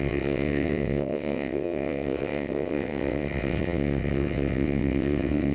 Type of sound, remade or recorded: remade